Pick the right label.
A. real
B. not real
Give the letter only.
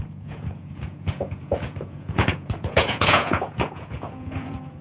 B